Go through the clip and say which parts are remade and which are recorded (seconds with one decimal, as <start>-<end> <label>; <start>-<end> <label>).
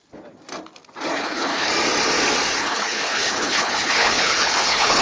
0.0-1.1 recorded; 1.1-1.7 remade; 1.7-2.6 recorded; 2.6-5.0 remade